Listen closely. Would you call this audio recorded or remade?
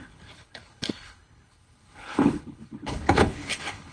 remade